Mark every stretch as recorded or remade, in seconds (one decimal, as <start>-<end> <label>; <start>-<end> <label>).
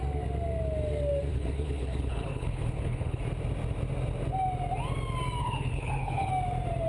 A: 0.0-1.3 recorded; 1.3-3.2 remade; 3.2-5.4 recorded; 5.4-6.3 remade; 6.3-6.9 recorded